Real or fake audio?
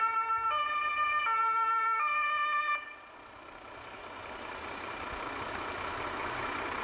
real